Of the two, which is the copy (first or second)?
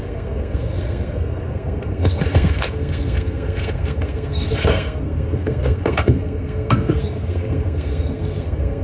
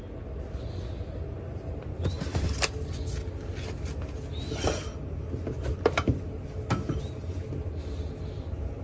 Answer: first